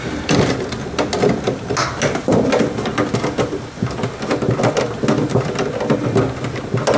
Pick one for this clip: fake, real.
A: real